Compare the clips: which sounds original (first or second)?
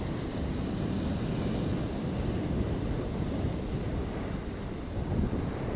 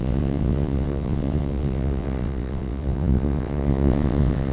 first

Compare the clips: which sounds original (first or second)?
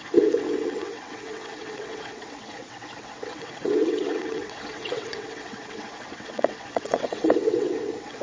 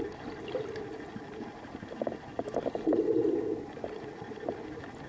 second